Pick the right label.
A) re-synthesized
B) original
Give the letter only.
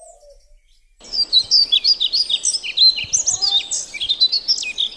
B